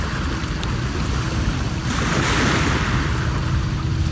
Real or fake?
real